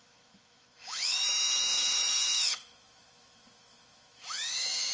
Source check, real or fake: fake